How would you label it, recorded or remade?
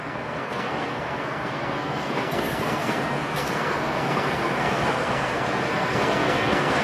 remade